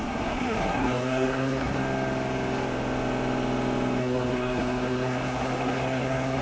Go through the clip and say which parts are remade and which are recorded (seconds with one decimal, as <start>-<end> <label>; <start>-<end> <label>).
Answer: 0.0-1.8 remade; 1.8-4.0 recorded; 4.0-6.4 remade